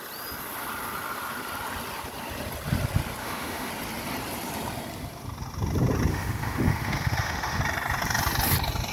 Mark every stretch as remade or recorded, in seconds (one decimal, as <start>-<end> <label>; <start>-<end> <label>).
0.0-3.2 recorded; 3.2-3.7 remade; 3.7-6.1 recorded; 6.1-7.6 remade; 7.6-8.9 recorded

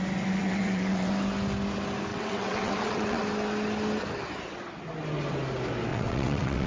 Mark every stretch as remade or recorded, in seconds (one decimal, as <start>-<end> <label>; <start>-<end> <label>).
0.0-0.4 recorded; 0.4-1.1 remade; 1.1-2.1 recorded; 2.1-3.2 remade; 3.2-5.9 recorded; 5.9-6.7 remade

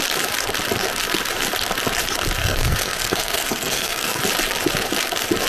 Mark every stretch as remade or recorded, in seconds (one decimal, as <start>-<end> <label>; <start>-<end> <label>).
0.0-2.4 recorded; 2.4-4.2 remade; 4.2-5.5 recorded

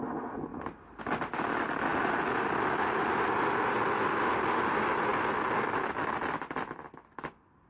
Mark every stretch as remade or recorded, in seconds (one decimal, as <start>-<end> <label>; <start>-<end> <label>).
0.0-1.9 recorded; 1.9-2.5 remade; 2.5-7.7 recorded

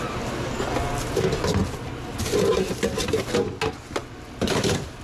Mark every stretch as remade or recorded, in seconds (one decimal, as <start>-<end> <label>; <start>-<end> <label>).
0.0-5.0 recorded